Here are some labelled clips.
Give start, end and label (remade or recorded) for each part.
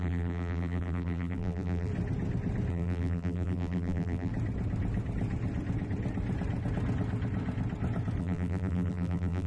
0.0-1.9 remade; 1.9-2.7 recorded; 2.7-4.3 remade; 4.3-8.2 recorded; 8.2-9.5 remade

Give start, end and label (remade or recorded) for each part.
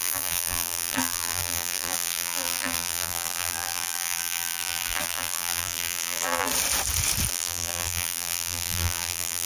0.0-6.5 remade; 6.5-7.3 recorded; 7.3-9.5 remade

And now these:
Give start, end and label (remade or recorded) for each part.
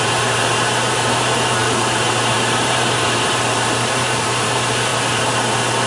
0.0-4.9 remade; 4.9-5.9 recorded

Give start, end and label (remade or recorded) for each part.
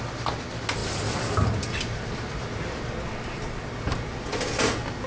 0.0-5.1 recorded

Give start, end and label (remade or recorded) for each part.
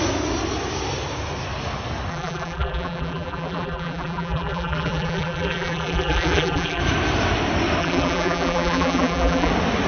0.0-2.1 recorded; 2.1-6.8 remade; 6.8-7.8 recorded; 7.8-9.5 remade; 9.5-9.9 recorded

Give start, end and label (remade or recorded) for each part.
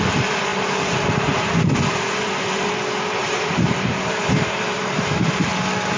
0.0-0.5 recorded; 0.5-2.7 remade; 2.7-3.2 recorded; 3.2-5.5 remade; 5.5-6.0 recorded